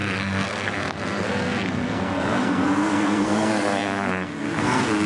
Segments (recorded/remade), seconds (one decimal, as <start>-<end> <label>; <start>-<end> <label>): 0.0-5.1 remade